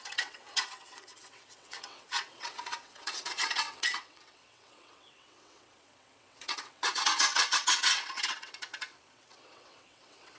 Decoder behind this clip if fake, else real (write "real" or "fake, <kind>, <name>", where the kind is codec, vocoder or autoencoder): fake, vocoder, WaveNeXt